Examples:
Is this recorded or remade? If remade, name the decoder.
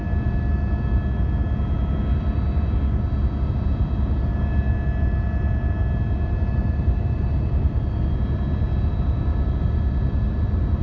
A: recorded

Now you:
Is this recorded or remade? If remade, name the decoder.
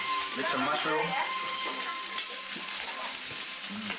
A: remade, vocoder, BigVGAN v2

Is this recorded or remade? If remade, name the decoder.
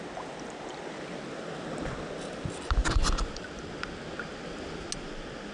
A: recorded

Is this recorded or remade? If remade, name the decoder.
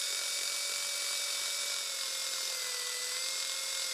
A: recorded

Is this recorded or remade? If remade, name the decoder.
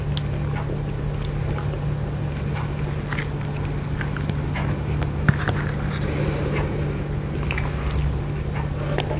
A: recorded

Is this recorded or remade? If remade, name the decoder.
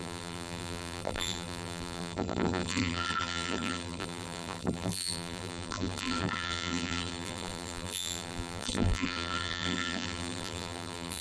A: remade, vocoder, BigVGAN v2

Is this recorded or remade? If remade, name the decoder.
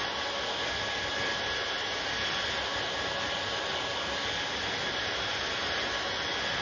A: recorded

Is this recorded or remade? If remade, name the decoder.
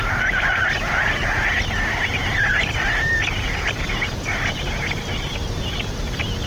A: recorded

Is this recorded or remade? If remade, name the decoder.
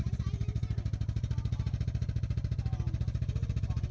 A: recorded